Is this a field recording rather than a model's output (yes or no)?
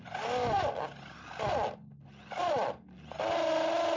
yes